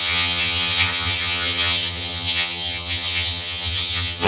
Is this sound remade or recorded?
remade